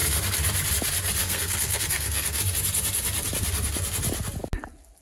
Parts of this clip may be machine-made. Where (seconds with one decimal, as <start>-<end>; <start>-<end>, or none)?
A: 1.2-2.4